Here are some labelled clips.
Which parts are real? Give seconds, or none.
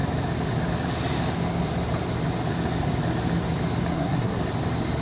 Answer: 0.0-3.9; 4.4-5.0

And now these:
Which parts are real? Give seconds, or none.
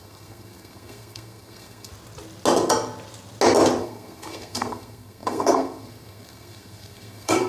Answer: 1.9-3.8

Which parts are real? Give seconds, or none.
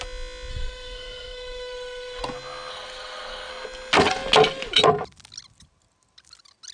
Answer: 0.0-0.5; 2.2-2.7; 3.5-6.7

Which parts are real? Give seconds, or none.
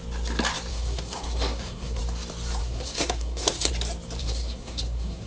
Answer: 0.0-0.7; 2.0-2.6; 3.7-4.2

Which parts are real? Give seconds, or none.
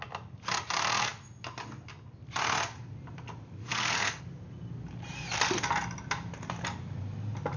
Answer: 0.0-3.6; 4.2-7.6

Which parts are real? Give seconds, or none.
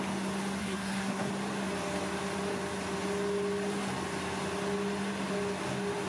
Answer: 0.0-0.6; 1.3-6.1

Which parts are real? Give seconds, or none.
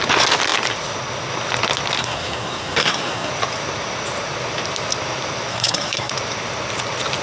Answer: 0.0-2.0; 3.3-5.5; 6.1-7.2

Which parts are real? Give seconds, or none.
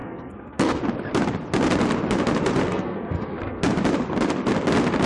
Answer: 0.8-2.7; 3.6-5.1